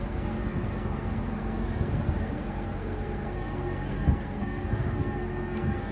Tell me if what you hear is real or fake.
fake